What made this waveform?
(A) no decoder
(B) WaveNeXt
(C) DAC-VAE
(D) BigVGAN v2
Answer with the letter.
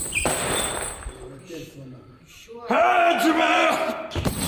D